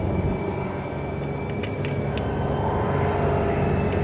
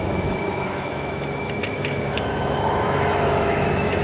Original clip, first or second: first